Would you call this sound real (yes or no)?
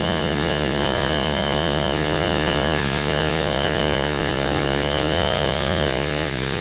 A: no